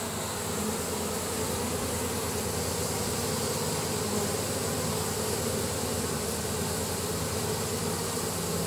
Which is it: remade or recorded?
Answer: recorded